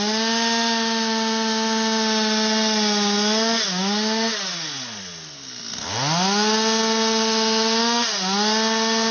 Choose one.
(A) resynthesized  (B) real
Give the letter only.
B